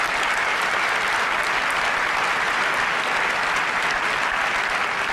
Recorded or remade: recorded